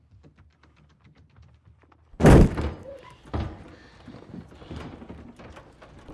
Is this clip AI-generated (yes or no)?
no